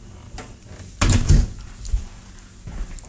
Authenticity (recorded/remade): recorded